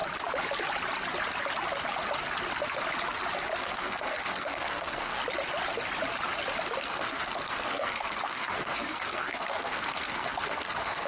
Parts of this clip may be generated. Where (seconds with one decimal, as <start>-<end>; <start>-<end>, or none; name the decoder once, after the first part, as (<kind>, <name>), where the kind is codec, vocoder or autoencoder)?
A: 3.6-5.2 (codec, SNAC); 6.8-11.1